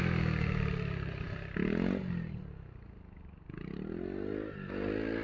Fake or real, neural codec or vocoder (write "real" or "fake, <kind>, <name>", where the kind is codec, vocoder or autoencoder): real